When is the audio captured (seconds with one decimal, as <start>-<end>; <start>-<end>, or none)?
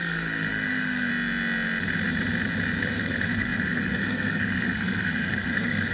1.1-2.8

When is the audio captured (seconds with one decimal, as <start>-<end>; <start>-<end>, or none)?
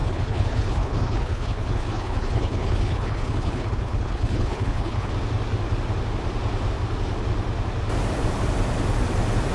5.1-9.5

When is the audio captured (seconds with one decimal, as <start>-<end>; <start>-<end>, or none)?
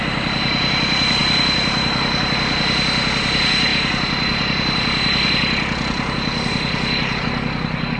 0.0-8.0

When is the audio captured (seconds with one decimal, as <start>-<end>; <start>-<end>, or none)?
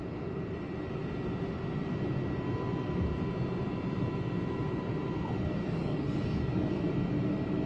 0.0-5.6; 6.7-7.7